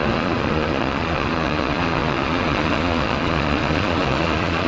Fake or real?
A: fake